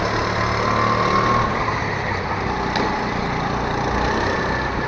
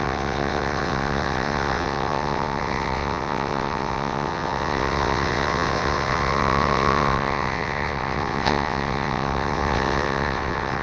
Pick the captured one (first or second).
first